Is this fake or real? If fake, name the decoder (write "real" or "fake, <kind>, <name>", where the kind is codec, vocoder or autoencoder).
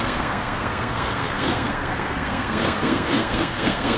fake, codec, SNAC